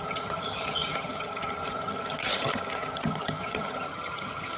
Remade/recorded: remade